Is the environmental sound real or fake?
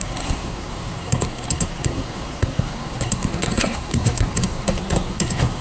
fake